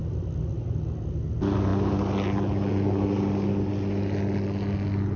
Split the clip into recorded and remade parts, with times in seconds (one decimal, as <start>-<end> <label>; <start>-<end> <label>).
0.0-5.2 recorded